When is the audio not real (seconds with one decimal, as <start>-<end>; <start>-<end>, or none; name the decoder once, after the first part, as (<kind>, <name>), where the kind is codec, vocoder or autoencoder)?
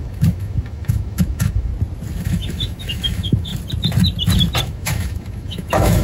0.0-1.7 (autoencoder, DAC-VAE); 2.2-3.5; 4.6-6.0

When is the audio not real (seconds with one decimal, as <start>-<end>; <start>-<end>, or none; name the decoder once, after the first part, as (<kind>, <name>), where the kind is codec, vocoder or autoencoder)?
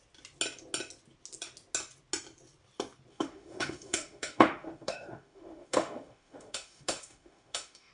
3.1-7.9 (autoencoder, DAC-VAE)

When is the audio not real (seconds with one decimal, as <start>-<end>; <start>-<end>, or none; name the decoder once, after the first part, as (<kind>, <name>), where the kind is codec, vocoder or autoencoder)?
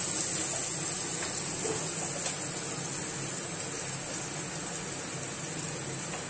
none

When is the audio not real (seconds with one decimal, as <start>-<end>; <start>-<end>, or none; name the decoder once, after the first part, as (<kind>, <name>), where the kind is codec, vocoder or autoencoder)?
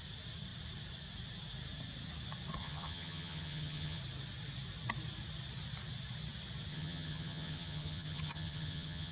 2.6-4.0 (vocoder, HiFi-GAN); 6.7-9.1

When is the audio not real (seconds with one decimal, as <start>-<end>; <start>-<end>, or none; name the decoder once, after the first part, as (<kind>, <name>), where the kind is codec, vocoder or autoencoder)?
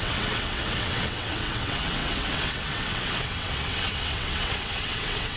0.0-5.4 (vocoder, WaveNeXt)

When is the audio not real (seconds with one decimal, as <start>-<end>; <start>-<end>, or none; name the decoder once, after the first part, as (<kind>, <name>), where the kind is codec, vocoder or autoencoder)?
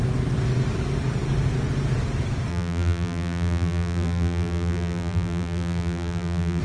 2.5-6.6 (vocoder, BigVGAN v2)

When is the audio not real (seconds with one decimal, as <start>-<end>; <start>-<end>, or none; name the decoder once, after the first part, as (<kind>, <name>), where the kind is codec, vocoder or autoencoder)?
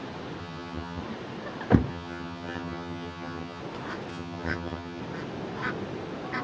0.4-1.0 (vocoder, HiFi-GAN); 1.9-3.6; 4.1-5.0